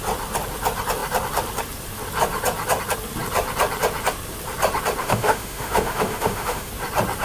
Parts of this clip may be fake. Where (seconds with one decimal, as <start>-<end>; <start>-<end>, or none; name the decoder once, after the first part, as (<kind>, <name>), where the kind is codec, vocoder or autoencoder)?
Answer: 5.0-6.7 (autoencoder, DAC-VAE)